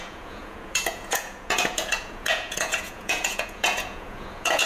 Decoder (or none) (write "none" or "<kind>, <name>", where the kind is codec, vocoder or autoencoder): vocoder, Vocos